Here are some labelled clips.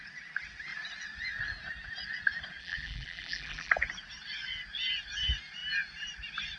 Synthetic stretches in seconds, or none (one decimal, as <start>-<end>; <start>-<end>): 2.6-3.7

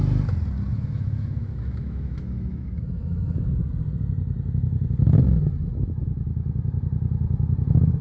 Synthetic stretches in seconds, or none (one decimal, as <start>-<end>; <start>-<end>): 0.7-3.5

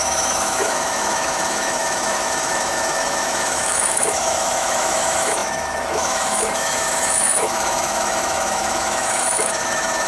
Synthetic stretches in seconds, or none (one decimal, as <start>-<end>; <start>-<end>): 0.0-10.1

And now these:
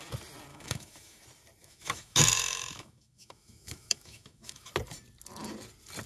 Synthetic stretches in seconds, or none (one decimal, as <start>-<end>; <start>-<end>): 0.5-1.2; 1.6-4.7